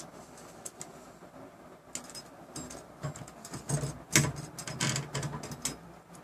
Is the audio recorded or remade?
recorded